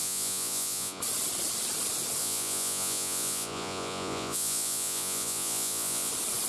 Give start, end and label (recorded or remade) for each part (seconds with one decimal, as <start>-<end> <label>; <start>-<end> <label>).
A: 0.0-1.0 remade; 1.0-2.2 recorded; 2.2-6.1 remade; 6.1-6.5 recorded